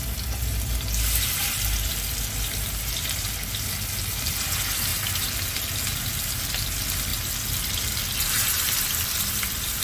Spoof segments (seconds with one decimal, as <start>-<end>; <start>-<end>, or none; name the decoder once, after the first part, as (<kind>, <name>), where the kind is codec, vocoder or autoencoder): 4.9-6.5 (vocoder, BigVGAN v2)